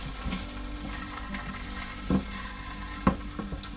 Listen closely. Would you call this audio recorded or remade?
recorded